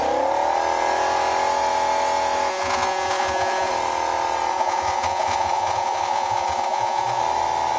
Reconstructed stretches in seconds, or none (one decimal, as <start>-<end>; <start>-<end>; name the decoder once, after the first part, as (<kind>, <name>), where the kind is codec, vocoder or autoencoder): 2.5-3.7 (vocoder, Vocos); 4.5-7.2

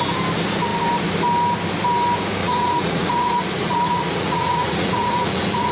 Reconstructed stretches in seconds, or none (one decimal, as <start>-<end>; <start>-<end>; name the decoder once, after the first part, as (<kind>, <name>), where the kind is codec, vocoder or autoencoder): 2.4-5.7 (vocoder, Vocos)

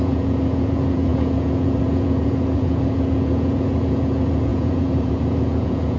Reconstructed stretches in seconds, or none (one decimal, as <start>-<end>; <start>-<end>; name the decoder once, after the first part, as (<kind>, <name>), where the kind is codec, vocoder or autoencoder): 0.0-6.0 (vocoder, Vocos)

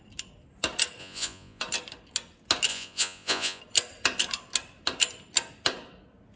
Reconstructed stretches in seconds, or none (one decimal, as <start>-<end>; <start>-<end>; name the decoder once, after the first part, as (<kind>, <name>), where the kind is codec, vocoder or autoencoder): 1.0-1.6 (vocoder, Vocos); 2.7-3.6